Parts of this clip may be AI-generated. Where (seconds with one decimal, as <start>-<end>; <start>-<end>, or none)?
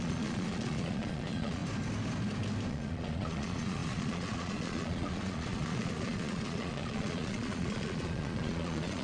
0.0-1.6; 2.7-9.0